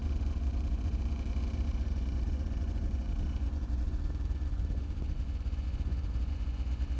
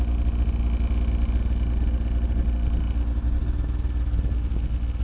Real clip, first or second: second